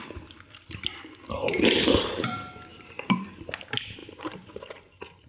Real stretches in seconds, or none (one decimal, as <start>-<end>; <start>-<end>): 0.0-1.5; 2.3-2.7; 3.4-4.0